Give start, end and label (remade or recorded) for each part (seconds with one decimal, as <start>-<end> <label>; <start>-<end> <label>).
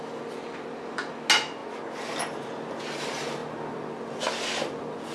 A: 0.0-5.1 recorded